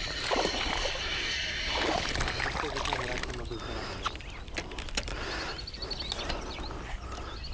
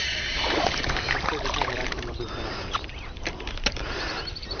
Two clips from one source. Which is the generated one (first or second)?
second